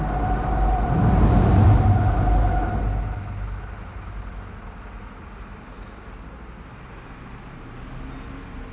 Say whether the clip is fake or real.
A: real